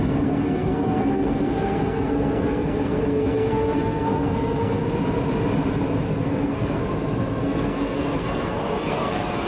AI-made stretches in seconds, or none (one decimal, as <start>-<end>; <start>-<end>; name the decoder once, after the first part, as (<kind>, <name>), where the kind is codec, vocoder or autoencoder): 0.0-4.8 (codec, SNAC); 6.2-6.8; 7.4-9.5